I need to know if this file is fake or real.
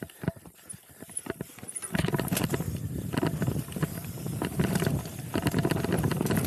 real